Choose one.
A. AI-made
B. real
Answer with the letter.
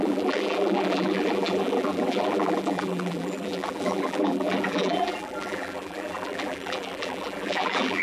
A